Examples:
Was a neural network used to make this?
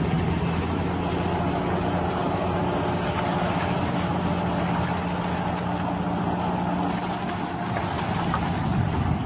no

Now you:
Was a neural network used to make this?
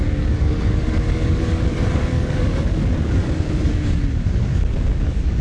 yes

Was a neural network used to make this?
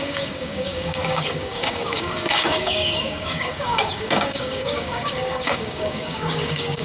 yes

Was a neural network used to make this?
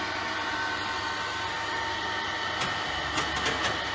no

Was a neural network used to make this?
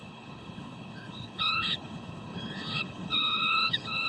yes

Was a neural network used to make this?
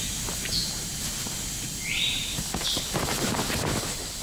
yes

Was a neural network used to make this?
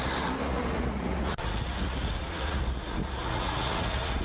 yes